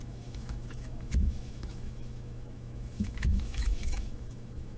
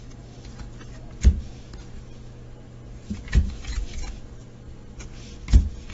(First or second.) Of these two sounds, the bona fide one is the second